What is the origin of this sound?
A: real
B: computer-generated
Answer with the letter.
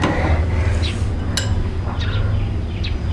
A